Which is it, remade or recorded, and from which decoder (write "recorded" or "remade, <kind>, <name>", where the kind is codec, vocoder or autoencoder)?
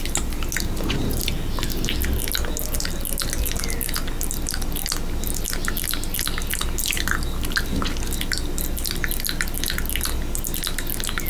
recorded